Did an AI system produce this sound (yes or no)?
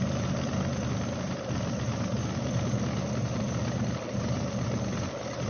no